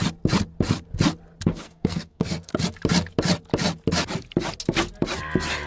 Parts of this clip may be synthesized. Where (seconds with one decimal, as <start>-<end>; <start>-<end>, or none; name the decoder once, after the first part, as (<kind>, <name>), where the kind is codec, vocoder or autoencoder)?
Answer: 1.5-2.6 (codec, SNAC)